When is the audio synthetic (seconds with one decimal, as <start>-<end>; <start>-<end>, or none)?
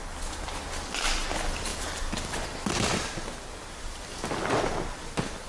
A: none